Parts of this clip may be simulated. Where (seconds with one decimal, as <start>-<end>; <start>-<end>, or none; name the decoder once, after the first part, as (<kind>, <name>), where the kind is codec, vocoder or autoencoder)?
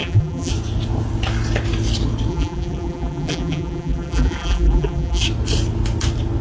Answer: 0.0-0.5 (vocoder, BigVGAN v2); 2.3-5.2